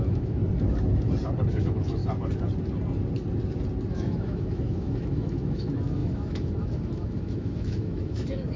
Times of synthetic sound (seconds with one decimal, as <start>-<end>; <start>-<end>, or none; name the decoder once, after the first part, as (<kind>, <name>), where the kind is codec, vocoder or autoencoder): 0.0-0.4 (autoencoder, DAC-VAE); 1.5-2.0; 3.9-8.6

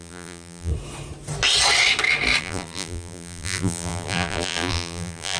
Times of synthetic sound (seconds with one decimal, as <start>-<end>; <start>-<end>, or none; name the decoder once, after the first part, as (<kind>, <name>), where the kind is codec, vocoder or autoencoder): 0.0-0.7 (vocoder, BigVGAN v2); 2.4-5.4

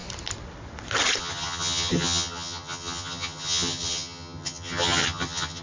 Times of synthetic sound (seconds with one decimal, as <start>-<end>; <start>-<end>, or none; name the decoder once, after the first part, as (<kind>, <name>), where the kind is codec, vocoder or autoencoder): 1.2-5.6 (vocoder, HiFi-GAN)

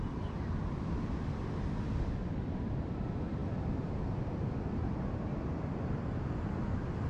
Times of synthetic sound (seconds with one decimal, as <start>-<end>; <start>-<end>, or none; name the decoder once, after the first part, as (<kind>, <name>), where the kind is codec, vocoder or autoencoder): none

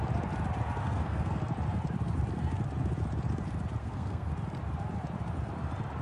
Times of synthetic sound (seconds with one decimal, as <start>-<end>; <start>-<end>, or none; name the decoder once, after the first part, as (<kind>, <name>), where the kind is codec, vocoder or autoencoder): 0.8-1.4 (codec, SNAC); 3.8-4.3

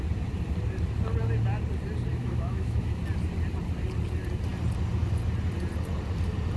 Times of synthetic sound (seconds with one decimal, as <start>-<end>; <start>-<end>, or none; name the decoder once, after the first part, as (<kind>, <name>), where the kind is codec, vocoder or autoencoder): 2.1-3.0 (autoencoder, DAC-VAE)

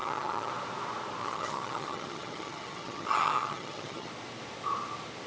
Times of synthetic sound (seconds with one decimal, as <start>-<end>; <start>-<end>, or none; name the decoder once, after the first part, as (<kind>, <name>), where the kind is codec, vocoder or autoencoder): 0.0-0.5 (vocoder, HiFi-GAN); 1.2-4.1

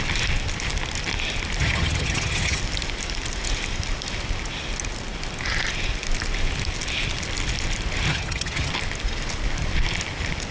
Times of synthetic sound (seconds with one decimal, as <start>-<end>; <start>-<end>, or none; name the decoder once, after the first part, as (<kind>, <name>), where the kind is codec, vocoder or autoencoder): 1.6-2.6 (vocoder, HiFi-GAN); 8.1-8.7